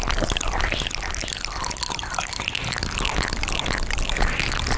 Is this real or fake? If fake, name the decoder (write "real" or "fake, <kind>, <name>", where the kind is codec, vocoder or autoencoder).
real